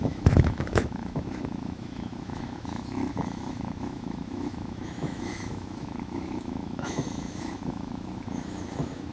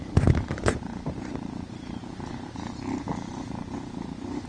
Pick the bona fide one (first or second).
second